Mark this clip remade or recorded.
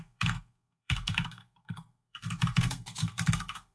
remade